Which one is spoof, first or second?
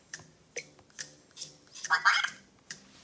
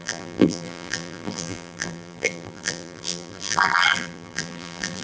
second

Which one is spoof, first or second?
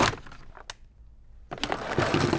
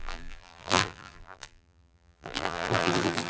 second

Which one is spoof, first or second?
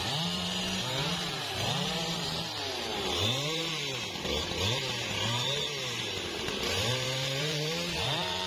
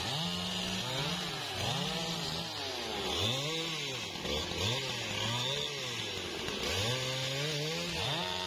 first